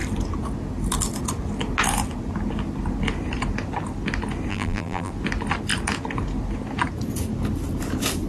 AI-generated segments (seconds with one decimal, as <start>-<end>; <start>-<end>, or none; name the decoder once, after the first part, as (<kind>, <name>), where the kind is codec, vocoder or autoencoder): 4.5-5.1 (vocoder, BigVGAN v2)